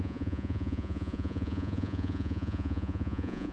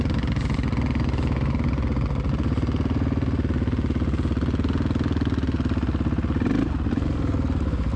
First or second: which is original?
second